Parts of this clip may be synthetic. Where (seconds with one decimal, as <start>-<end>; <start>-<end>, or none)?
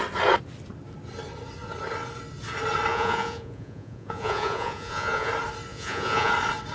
2.9-5.3; 5.7-6.3